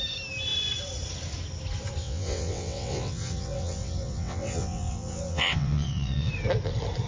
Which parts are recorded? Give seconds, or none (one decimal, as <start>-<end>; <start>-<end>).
0.0-2.0; 6.3-7.1